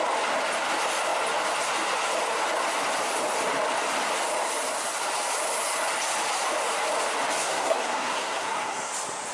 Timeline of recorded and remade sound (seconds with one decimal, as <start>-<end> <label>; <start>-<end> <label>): 0.0-7.4 recorded; 7.4-8.9 remade; 8.9-9.3 recorded